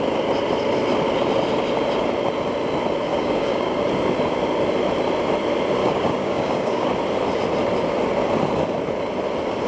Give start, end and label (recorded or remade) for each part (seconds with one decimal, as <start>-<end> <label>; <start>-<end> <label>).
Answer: 0.0-3.1 recorded; 3.1-3.8 remade; 3.8-5.8 recorded; 5.8-6.9 remade; 6.9-9.7 recorded

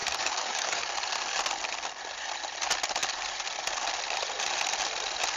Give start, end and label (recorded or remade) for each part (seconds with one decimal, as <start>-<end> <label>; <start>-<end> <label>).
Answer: 0.0-0.8 remade; 0.8-5.4 recorded

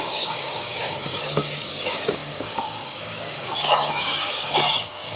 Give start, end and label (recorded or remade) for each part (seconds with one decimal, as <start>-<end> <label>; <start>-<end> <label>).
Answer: 0.0-5.2 remade

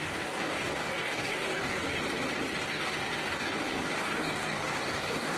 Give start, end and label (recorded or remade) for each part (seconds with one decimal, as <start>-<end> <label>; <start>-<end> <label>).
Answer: 0.0-2.0 remade; 2.0-2.7 recorded; 2.7-5.4 remade

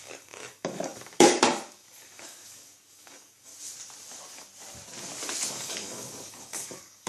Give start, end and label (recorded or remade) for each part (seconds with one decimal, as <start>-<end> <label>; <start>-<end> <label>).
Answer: 0.0-3.5 remade; 3.5-5.5 recorded; 5.5-7.1 remade